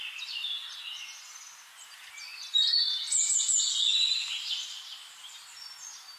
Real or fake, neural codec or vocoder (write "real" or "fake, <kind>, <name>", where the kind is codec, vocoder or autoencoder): real